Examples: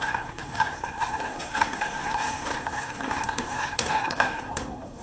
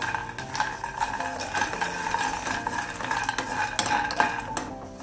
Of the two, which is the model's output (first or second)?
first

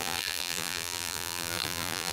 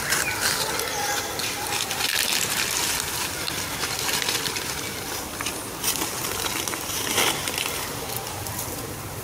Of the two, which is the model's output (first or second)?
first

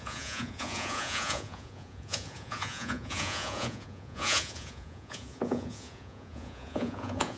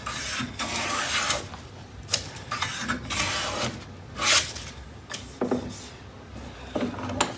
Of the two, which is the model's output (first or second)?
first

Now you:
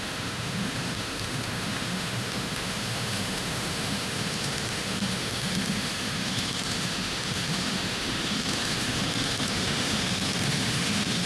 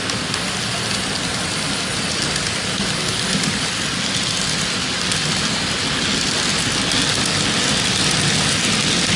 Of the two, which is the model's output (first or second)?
first